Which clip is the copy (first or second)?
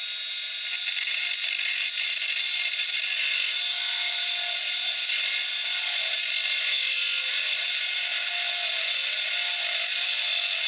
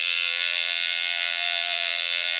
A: second